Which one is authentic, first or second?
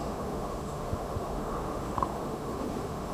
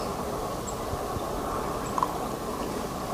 second